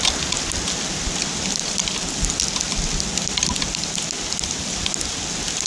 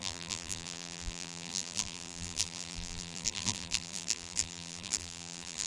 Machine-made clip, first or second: second